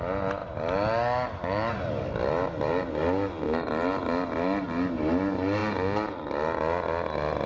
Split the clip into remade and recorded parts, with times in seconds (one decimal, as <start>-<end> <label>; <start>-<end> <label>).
0.0-7.5 recorded